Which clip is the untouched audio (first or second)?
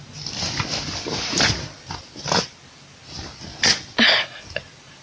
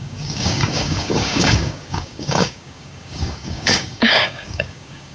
first